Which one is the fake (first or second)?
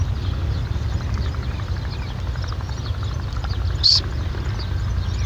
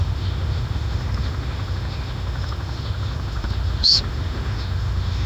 second